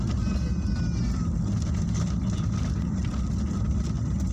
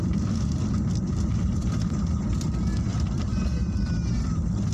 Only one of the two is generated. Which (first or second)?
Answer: second